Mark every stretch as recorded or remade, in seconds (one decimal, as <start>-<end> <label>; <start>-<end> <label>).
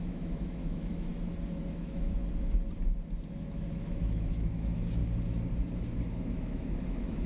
0.0-1.1 remade; 1.1-1.6 recorded; 1.6-2.2 remade; 2.2-3.4 recorded; 3.4-5.0 remade; 5.0-6.1 recorded; 6.1-7.3 remade